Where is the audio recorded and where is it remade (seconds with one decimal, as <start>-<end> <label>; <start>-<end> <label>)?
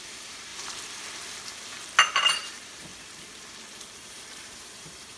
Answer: 0.0-0.5 remade; 0.5-2.3 recorded; 2.3-2.9 remade; 2.9-4.0 recorded; 4.0-5.2 remade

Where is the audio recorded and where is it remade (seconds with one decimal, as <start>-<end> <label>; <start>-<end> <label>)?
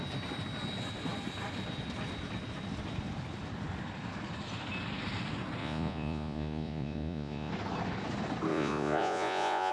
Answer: 0.0-5.6 recorded; 5.6-7.5 remade; 7.5-8.5 recorded; 8.5-9.7 remade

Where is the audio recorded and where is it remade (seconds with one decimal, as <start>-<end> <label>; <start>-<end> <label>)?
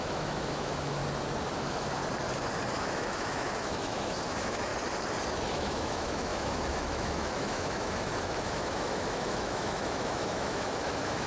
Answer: 0.0-1.0 remade; 1.0-1.6 recorded; 1.6-2.0 remade; 2.0-2.7 recorded; 2.7-4.7 remade; 4.7-5.5 recorded; 5.5-11.3 remade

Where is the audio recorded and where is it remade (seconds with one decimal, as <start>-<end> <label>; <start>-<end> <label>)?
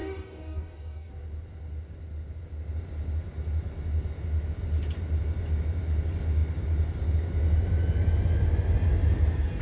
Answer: 0.0-1.1 remade; 1.1-9.6 recorded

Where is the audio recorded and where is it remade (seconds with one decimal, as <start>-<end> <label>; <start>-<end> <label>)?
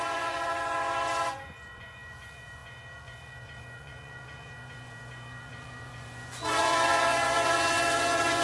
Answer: 0.0-8.4 remade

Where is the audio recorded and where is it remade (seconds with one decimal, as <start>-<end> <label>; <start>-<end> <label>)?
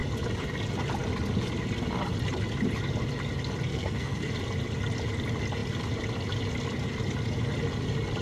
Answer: 0.0-3.7 recorded; 3.7-4.3 remade; 4.3-8.2 recorded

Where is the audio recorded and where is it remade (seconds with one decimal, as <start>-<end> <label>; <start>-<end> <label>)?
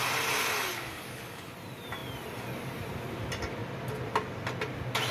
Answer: 0.0-0.7 recorded; 0.7-1.5 remade; 1.5-5.1 recorded